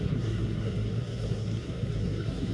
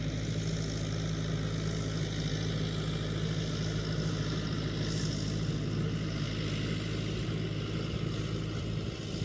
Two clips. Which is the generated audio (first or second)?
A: first